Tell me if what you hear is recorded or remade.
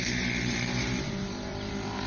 remade